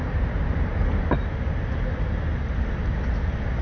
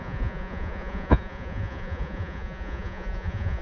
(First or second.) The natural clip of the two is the first